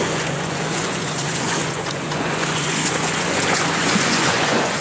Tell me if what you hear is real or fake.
fake